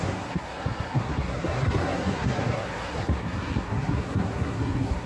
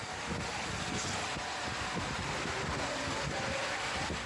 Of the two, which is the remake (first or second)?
first